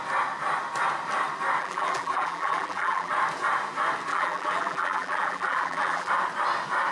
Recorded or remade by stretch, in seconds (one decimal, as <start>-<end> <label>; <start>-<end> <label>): 0.0-1.6 recorded; 1.6-3.1 remade; 3.1-4.1 recorded; 4.1-6.1 remade; 6.1-6.9 recorded